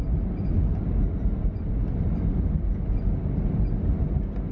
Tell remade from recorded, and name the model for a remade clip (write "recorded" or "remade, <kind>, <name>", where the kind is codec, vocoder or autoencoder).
recorded